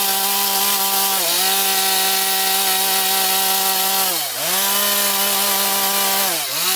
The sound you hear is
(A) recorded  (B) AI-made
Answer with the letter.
A